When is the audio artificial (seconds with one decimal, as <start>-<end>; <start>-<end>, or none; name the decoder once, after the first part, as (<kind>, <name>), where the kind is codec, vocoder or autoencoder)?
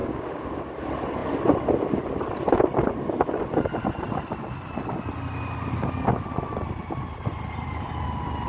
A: 0.0-0.7 (codec, DAC)